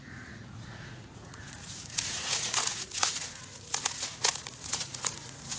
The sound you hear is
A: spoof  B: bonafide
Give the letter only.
A